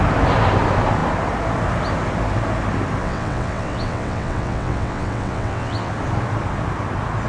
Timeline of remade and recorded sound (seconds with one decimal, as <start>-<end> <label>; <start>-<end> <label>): 0.0-3.0 recorded; 3.0-5.9 remade; 5.9-7.3 recorded